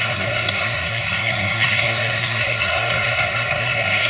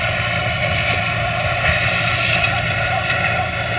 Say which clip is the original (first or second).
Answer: second